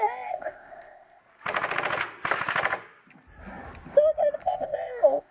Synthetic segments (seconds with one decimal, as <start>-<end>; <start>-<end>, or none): 0.0-1.2; 4.4-5.3